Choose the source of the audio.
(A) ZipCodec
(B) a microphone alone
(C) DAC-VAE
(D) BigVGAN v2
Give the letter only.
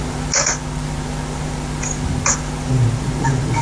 B